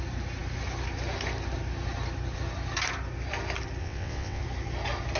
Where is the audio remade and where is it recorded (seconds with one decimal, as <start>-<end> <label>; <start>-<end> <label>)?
0.0-3.8 recorded; 3.8-4.4 remade; 4.4-5.2 recorded